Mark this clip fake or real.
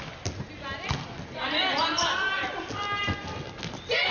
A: real